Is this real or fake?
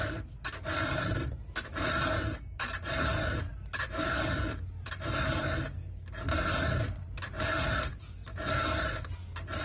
real